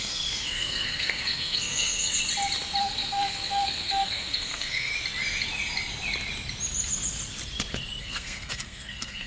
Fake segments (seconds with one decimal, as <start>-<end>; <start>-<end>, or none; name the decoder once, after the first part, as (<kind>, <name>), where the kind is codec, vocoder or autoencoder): 0.0-2.2 (codec, SNAC); 2.8-4.9; 8.0-9.3